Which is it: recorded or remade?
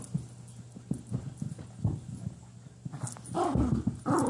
recorded